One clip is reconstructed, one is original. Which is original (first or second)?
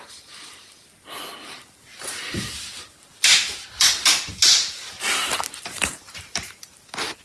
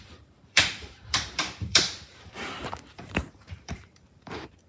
first